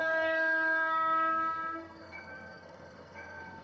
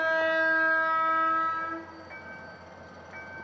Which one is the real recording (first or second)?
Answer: second